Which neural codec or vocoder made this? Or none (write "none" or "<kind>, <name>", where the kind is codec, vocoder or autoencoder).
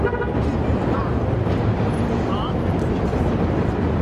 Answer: none